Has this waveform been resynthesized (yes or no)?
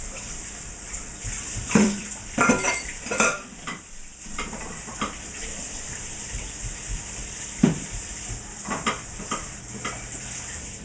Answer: yes